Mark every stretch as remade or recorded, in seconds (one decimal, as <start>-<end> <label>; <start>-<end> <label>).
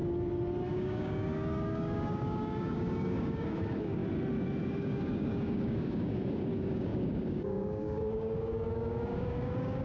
0.0-0.7 recorded; 0.7-4.0 remade; 4.0-4.7 recorded; 4.7-9.8 remade